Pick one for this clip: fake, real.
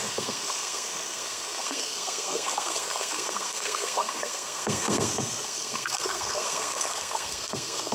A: fake